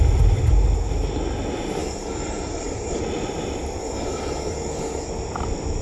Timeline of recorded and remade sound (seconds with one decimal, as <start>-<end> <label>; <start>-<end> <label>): 0.0-1.8 recorded; 1.8-3.0 remade; 3.0-3.8 recorded; 3.8-5.1 remade; 5.1-5.8 recorded